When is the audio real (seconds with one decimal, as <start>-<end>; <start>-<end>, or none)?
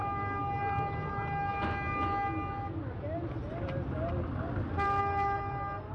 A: 0.0-5.9